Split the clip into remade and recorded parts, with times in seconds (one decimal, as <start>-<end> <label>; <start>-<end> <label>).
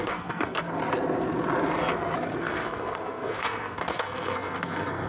0.0-0.8 remade; 0.8-2.4 recorded; 2.4-5.1 remade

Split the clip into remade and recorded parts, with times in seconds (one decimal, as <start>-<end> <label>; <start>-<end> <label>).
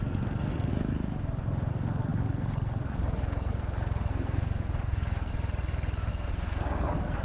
0.0-0.7 remade; 0.7-1.7 recorded; 1.7-5.3 remade; 5.3-6.1 recorded; 6.1-7.2 remade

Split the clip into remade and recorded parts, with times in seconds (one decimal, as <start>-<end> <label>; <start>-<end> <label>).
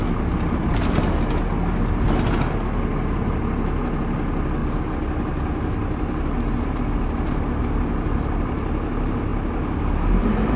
0.0-10.6 recorded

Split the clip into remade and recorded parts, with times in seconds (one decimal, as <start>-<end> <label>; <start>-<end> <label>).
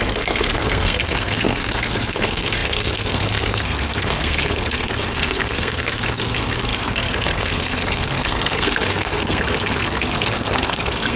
0.0-11.2 remade